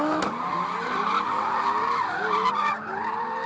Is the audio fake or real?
real